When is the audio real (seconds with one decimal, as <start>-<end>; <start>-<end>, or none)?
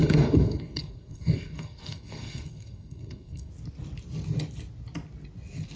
3.5-5.8